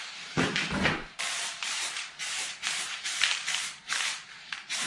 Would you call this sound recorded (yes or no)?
no